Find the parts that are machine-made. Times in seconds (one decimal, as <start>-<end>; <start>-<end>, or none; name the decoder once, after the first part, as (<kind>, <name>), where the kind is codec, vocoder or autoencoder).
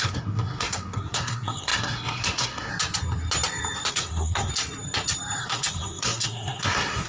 0.0-2.7 (codec, SNAC); 3.9-4.5; 5.4-7.1